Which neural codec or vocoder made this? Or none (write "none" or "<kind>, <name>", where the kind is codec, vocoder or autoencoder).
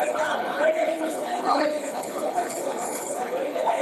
codec, HILCodec